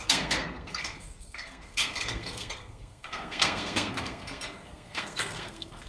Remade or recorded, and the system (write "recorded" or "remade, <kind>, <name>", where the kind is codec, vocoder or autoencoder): remade, codec, SNAC